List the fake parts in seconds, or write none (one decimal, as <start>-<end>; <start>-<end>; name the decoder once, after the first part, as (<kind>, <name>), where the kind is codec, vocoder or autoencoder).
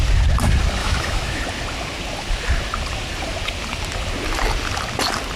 0.8-1.4 (autoencoder, DAC-VAE)